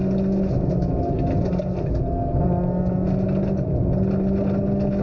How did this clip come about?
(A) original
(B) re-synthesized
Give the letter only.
A